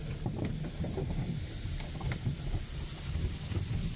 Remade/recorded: recorded